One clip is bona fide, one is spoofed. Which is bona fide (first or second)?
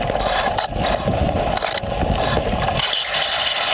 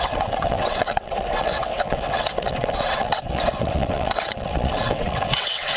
first